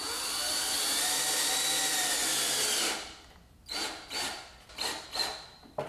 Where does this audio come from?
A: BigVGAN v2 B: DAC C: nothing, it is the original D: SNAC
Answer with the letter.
C